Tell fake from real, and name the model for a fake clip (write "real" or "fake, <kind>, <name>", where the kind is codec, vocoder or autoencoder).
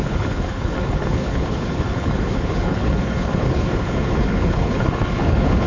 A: fake, codec, HILCodec